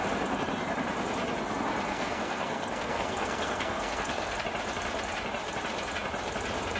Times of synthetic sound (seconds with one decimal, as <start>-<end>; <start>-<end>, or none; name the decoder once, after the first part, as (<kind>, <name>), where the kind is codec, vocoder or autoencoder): 1.9-4.4 (codec, SNAC)